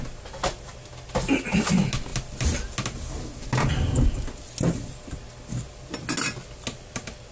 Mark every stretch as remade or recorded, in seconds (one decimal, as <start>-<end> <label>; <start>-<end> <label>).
0.0-7.3 recorded